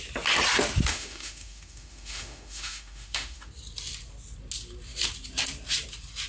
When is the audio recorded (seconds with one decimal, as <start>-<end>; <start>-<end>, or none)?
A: 0.0-0.9; 3.5-6.3